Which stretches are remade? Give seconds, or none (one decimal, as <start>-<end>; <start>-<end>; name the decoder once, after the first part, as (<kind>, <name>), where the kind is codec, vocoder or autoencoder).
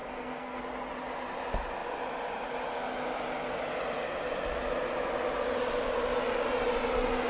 0.0-0.6 (codec, SNAC)